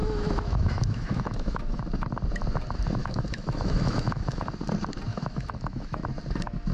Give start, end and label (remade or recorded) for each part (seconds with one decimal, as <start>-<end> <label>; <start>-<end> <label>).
0.0-1.8 remade; 1.8-3.0 recorded; 3.0-4.4 remade; 4.4-5.1 recorded; 5.1-6.1 remade; 6.1-6.7 recorded

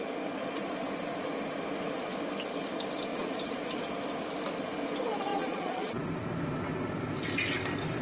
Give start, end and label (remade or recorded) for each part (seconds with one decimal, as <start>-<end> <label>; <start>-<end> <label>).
0.0-3.1 recorded; 3.1-3.8 remade; 3.8-5.3 recorded; 5.3-6.0 remade; 6.0-8.0 recorded

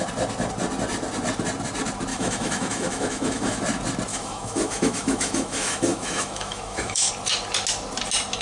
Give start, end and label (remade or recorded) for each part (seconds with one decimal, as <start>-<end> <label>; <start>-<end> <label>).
0.0-2.1 recorded; 2.1-3.6 remade; 3.6-4.1 recorded; 4.1-7.1 remade; 7.1-8.4 recorded

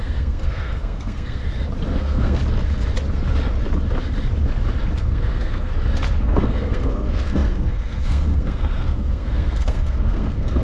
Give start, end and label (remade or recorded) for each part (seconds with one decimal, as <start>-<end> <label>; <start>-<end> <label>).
0.0-1.4 remade; 1.4-1.9 recorded; 1.9-2.4 remade; 2.4-5.0 recorded; 5.0-5.7 remade; 5.7-6.2 recorded; 6.2-10.6 remade